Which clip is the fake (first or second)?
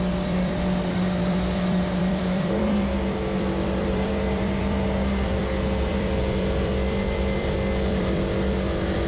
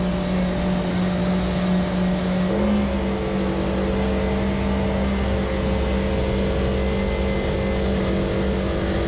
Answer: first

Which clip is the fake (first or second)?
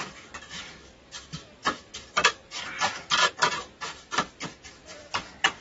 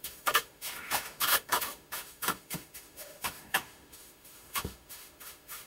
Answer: second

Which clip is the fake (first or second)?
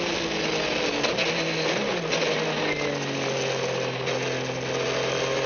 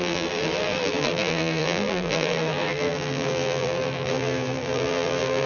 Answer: second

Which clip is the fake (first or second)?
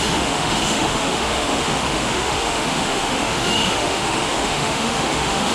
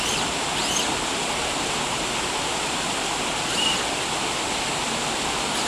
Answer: first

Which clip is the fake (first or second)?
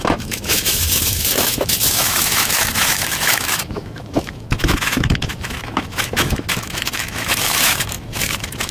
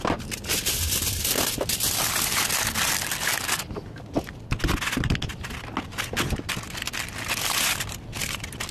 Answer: first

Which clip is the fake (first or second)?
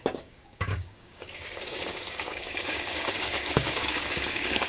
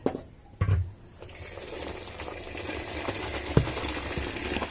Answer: first